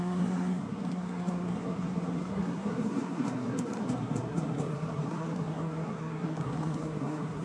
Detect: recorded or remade remade